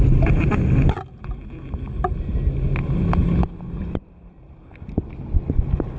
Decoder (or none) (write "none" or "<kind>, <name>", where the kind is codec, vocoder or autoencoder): none